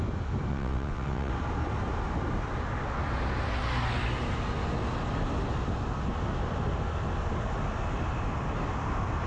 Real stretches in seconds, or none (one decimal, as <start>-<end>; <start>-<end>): 0.0-0.5; 1.3-9.3